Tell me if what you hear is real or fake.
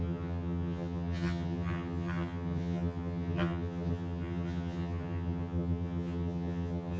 fake